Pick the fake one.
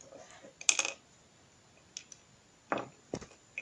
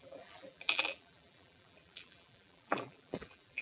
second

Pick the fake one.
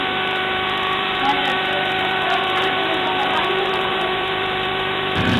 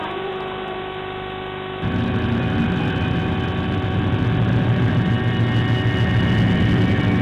first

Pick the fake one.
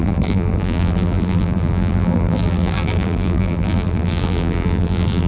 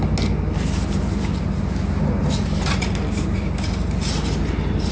first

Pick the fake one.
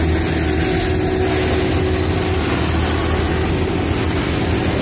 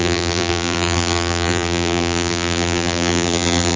second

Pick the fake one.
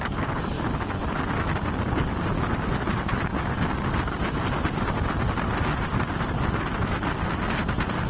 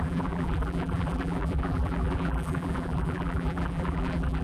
second